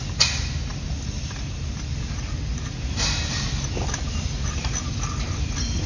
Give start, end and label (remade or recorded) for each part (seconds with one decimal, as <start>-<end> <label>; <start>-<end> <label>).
0.0-5.9 recorded